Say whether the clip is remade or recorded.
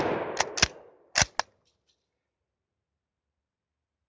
recorded